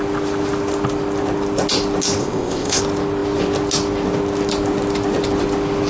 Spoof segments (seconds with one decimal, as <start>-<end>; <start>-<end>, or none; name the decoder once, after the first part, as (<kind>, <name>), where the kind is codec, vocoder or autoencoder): 2.2-2.8 (codec, ZipCodec)